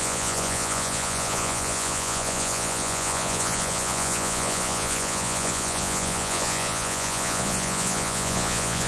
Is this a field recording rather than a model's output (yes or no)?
no